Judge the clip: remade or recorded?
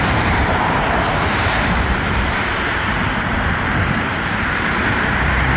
remade